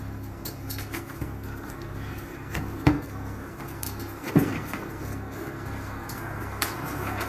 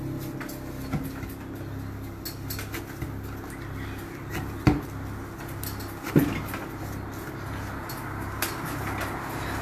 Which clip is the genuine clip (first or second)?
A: second